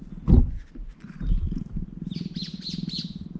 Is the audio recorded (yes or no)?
yes